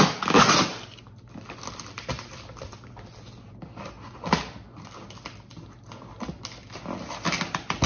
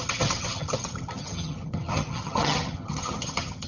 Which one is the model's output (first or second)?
second